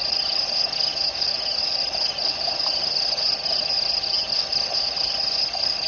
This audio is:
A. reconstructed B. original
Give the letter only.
B